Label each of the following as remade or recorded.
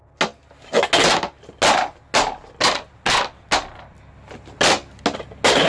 recorded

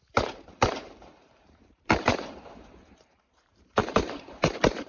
remade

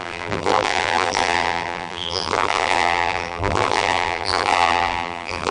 remade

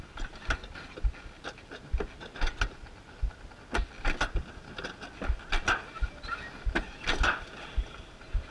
recorded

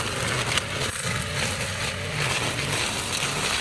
recorded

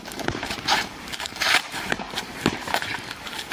remade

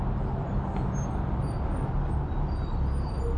recorded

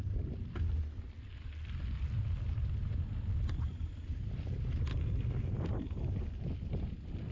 remade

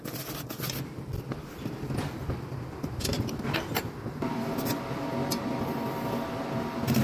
recorded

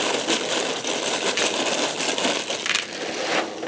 recorded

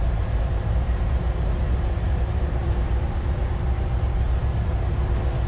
remade